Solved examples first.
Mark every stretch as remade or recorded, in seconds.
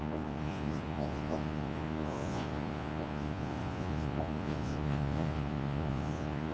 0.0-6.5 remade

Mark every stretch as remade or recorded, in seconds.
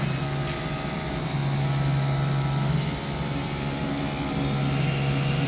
0.0-5.5 recorded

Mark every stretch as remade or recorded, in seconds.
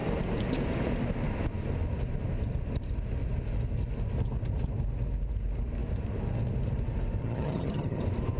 0.0-7.2 recorded; 7.2-8.0 remade; 8.0-8.4 recorded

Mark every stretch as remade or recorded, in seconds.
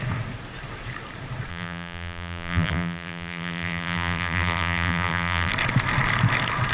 0.0-1.5 recorded; 1.5-5.5 remade; 5.5-6.7 recorded